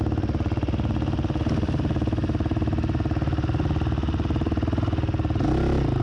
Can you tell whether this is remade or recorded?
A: recorded